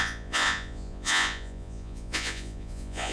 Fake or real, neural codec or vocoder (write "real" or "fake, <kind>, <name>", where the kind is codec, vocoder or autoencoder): fake, vocoder, Vocos